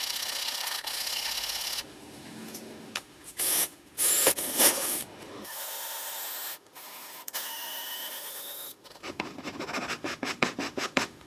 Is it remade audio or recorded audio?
remade